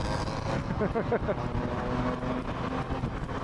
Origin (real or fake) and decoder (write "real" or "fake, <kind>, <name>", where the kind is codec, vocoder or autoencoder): real